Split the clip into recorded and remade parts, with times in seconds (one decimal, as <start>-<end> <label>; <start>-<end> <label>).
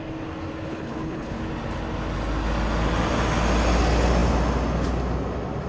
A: 0.0-0.7 recorded; 0.7-1.4 remade; 1.4-5.7 recorded